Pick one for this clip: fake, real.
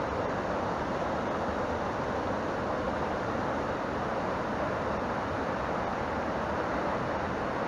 real